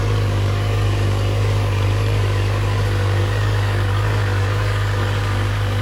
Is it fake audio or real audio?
fake